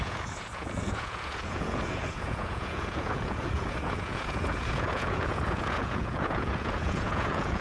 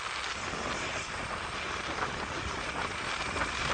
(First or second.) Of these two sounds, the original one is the second